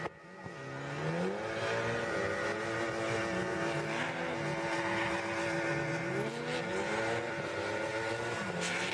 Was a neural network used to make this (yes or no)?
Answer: no